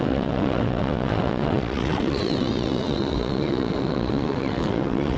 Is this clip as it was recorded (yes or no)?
no